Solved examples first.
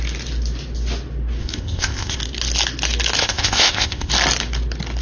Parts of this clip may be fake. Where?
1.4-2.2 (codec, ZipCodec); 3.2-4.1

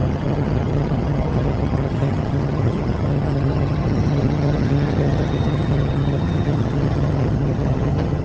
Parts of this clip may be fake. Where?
0.0-8.2 (vocoder, HiFi-GAN)

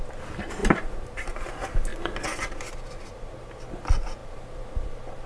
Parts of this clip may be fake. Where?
0.6-1.5 (vocoder, BigVGAN v2)

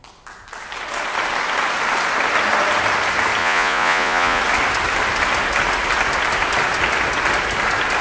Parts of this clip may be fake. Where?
3.4-4.4 (vocoder, Vocos)

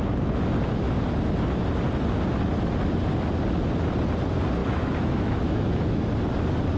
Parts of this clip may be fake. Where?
4.6-6.1 (autoencoder, DAC-VAE)

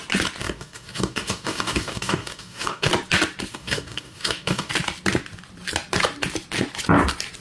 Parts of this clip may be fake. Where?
0.4-2.9 (codec, DAC); 3.5-4.7